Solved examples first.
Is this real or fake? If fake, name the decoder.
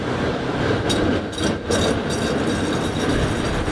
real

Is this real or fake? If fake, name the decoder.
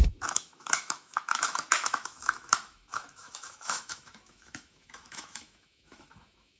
fake, autoencoder, DAC-VAE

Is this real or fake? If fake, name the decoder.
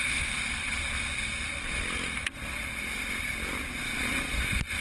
real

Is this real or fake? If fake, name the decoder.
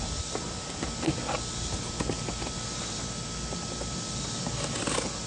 real